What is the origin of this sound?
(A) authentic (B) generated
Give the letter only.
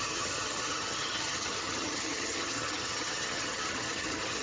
B